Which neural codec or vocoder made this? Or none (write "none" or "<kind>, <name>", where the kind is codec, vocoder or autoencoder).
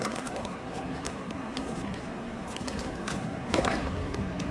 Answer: codec, SNAC